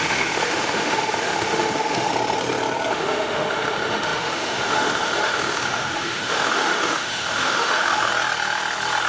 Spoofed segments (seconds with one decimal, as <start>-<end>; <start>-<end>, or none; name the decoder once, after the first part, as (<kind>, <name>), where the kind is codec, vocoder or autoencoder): 0.0-2.1 (autoencoder, DAC-VAE); 2.9-8.1